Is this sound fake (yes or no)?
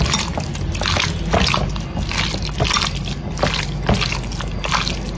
no